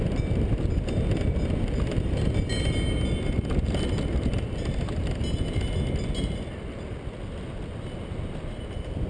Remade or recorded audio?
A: recorded